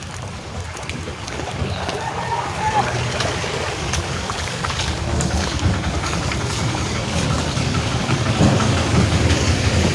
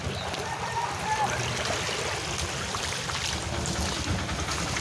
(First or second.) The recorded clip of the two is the second